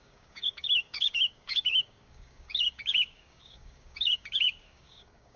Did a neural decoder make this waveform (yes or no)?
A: yes